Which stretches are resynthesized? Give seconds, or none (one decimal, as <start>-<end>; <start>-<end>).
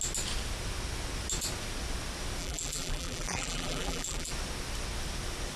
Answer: 2.4-4.3